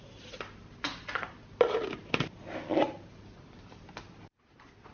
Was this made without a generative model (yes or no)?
yes